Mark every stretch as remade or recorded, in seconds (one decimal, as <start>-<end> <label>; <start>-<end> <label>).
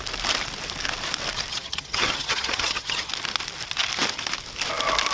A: 0.0-1.5 recorded; 1.5-3.1 remade; 3.1-5.1 recorded